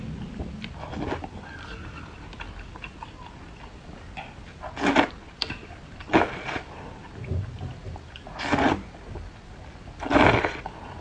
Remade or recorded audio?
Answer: recorded